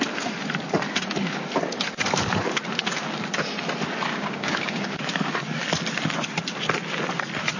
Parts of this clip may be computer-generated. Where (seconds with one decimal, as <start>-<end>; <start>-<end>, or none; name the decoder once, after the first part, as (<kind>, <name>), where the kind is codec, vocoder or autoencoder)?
4.1-5.0 (codec, DAC)